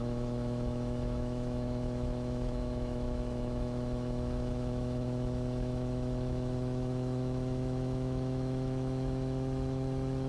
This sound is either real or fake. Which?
fake